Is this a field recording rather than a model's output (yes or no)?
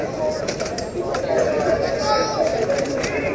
yes